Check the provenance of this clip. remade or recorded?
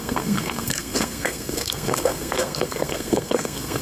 remade